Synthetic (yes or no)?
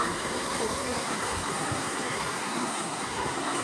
yes